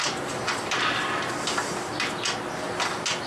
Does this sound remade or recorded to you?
recorded